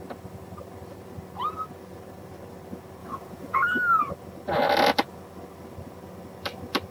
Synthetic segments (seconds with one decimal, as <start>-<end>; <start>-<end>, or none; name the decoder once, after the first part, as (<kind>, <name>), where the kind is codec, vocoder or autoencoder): 3.0-3.6 (vocoder, Vocos)